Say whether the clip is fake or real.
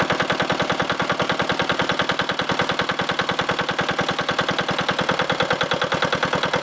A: real